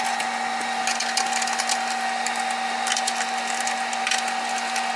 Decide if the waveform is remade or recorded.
recorded